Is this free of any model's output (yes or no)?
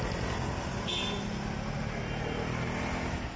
yes